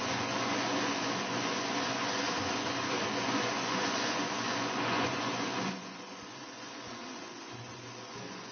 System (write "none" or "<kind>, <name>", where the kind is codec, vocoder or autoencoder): vocoder, Vocos